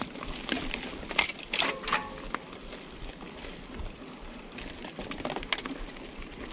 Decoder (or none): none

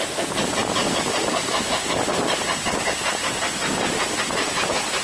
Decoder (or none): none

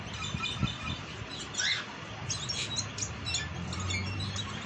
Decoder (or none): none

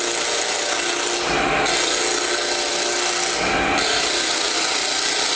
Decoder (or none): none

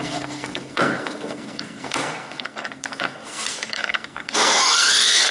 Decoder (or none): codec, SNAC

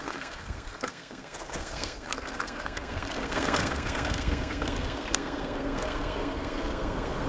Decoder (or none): codec, SNAC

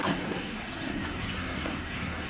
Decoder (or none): codec, SNAC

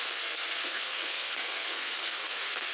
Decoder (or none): codec, SNAC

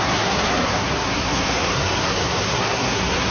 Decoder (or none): codec, SNAC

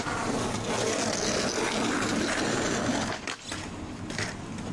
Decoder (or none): none